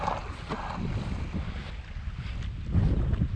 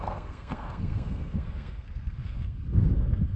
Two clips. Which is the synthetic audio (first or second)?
second